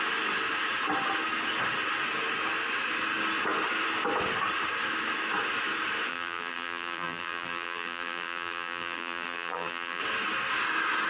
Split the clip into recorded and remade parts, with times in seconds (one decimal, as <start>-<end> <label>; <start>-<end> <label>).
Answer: 0.0-6.1 recorded; 6.1-10.0 remade; 10.0-11.1 recorded